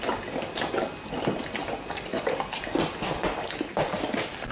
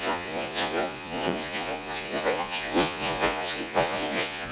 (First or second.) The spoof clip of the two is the second